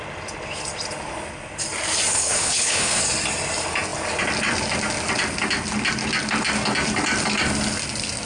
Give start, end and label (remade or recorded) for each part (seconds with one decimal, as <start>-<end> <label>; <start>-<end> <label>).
0.0-2.1 recorded; 2.1-3.0 remade; 3.0-8.3 recorded